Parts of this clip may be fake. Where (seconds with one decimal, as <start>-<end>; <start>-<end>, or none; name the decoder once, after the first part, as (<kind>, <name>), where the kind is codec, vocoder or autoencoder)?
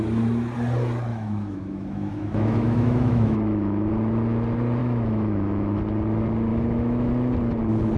1.1-3.9 (autoencoder, DAC-VAE); 4.8-5.8; 6.5-7.1